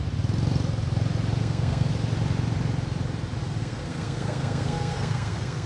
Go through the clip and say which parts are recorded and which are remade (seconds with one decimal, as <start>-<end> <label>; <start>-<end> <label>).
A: 0.0-1.4 recorded; 1.4-1.9 remade; 1.9-3.6 recorded; 3.6-5.7 remade

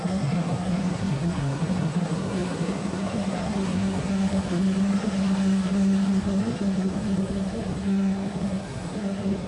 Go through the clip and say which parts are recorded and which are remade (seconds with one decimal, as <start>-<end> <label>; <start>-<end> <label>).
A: 0.0-9.5 remade

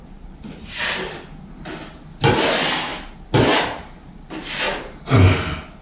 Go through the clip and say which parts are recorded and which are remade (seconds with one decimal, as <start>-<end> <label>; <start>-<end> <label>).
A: 0.0-5.8 recorded

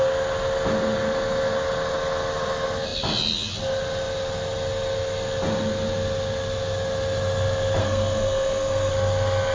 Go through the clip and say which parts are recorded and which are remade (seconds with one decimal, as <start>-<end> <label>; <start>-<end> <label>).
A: 0.0-7.8 recorded; 7.8-8.9 remade; 8.9-9.5 recorded

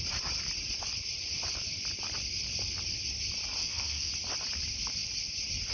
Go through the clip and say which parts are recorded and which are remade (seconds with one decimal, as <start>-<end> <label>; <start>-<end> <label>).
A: 0.0-3.6 recorded; 3.6-4.1 remade; 4.1-5.7 recorded

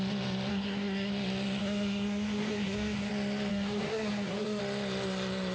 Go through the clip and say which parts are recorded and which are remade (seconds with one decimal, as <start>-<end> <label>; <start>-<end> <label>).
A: 0.0-0.5 recorded; 0.5-1.1 remade; 1.1-1.6 recorded; 1.6-3.1 remade; 3.1-3.5 recorded; 3.5-4.6 remade; 4.6-5.5 recorded

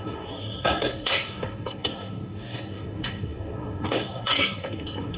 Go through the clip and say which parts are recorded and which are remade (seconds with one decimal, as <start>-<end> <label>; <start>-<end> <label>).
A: 0.0-5.2 remade

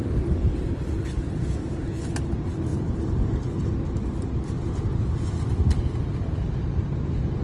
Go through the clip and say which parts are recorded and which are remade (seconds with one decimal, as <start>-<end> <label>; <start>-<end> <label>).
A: 0.0-7.4 recorded